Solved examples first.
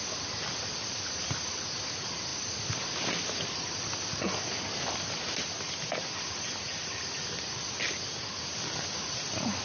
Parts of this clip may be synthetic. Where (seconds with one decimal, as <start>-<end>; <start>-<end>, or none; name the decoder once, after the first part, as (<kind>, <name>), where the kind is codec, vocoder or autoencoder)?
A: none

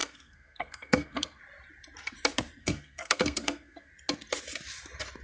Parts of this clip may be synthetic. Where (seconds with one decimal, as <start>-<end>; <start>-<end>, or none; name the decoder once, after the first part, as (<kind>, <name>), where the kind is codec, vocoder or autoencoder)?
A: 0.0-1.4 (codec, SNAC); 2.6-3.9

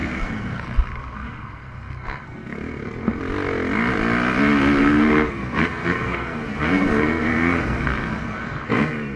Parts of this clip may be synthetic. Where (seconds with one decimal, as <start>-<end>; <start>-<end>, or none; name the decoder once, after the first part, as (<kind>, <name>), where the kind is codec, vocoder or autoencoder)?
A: 0.0-3.2 (codec, SNAC); 4.8-9.2

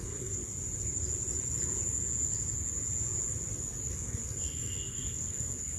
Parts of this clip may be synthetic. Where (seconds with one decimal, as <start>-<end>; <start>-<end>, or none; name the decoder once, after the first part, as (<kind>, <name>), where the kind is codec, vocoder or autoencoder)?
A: 0.0-0.4 (codec, SNAC); 3.9-5.8

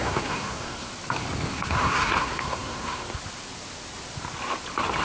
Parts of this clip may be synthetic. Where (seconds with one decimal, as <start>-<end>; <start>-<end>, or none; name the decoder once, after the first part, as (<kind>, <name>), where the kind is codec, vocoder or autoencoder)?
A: 0.0-0.9 (codec, SNAC); 1.5-3.2

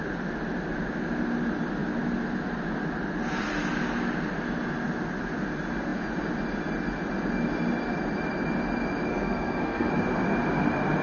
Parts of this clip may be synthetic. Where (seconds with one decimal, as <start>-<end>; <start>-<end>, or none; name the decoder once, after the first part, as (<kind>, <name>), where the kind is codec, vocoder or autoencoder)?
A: 9.1-9.9 (codec, SNAC)